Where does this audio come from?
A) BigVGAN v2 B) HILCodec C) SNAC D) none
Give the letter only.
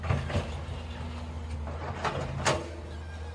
D